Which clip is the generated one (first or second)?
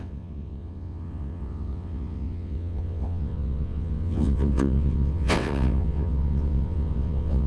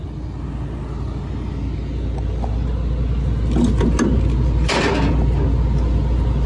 first